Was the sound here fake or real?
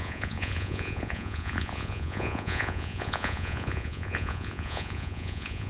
fake